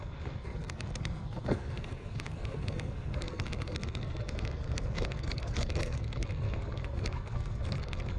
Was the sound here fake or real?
fake